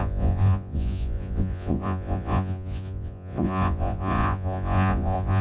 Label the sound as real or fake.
fake